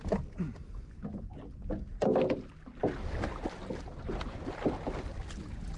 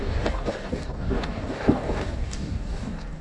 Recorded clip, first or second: first